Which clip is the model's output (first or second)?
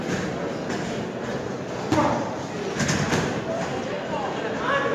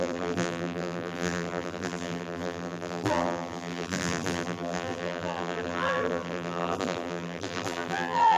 second